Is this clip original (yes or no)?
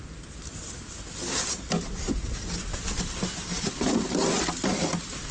yes